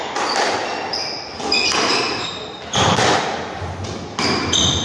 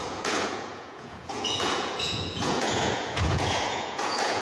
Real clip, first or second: first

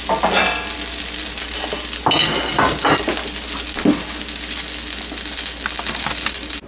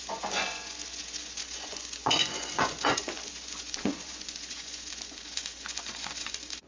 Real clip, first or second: first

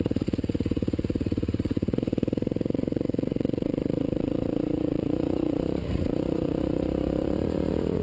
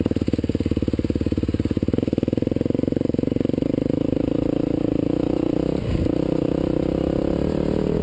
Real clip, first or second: second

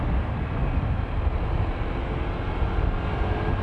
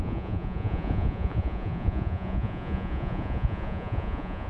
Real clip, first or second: first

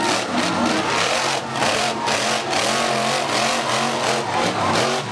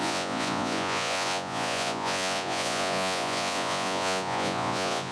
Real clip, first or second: first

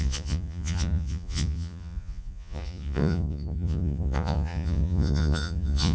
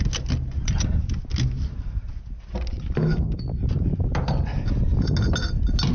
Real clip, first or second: second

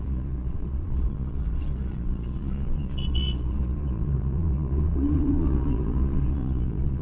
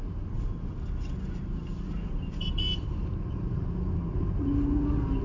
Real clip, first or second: second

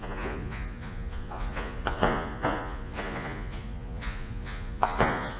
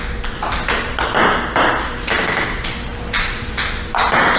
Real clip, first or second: second